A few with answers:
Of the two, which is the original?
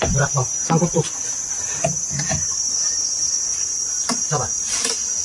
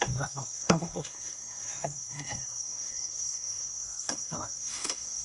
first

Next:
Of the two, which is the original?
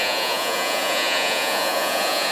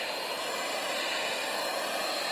second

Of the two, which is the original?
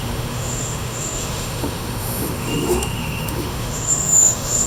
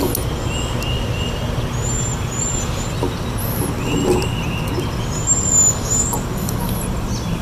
second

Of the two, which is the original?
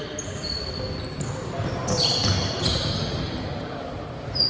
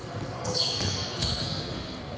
first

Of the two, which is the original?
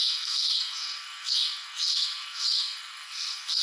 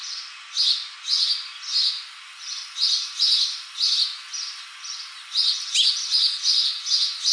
second